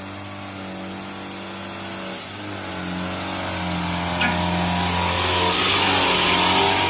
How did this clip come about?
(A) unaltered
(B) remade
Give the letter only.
A